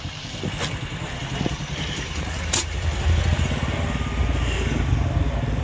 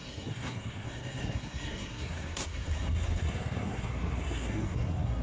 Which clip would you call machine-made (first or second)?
second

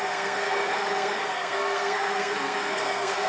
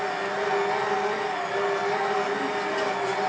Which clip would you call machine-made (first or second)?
first